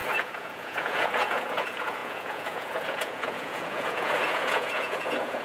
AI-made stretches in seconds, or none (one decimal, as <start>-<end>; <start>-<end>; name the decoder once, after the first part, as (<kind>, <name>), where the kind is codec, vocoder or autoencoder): 0.0-5.4 (vocoder, Vocos)